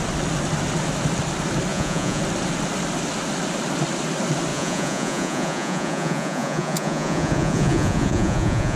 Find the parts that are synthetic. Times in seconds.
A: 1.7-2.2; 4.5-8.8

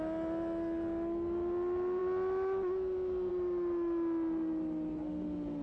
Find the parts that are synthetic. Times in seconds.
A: none

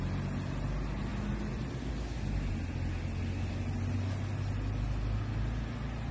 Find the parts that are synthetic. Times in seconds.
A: none

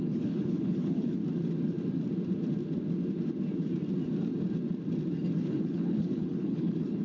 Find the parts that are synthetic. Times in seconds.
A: 0.0-1.2; 5.4-7.0

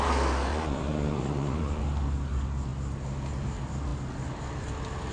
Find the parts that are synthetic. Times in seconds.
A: 0.5-1.8

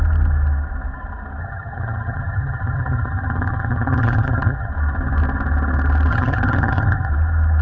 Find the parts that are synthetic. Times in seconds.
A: 1.4-4.7; 6.1-7.1

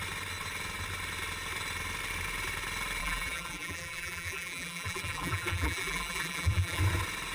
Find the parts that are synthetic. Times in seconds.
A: 3.0-6.8

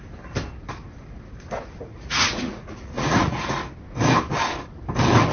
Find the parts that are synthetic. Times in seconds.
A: 1.9-3.6